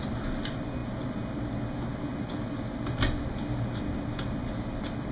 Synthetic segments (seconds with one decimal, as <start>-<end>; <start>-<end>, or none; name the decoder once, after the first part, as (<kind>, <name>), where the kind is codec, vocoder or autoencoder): none